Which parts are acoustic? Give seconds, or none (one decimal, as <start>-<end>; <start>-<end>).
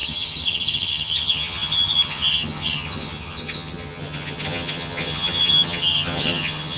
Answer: none